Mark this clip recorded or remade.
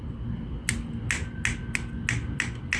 recorded